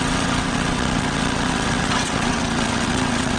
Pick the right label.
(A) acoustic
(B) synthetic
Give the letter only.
B